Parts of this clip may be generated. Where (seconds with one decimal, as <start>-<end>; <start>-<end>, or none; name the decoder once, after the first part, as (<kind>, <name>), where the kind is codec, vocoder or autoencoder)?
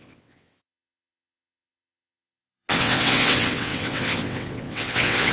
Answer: 0.0-5.3 (vocoder, WaveNeXt)